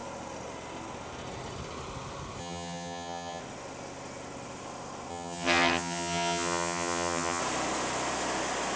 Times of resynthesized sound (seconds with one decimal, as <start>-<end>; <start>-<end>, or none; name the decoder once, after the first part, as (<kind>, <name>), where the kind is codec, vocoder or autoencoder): 2.4-3.4 (vocoder, HiFi-GAN); 5.1-7.4